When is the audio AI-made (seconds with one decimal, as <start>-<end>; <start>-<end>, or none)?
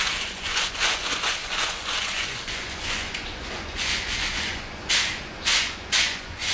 0.0-6.5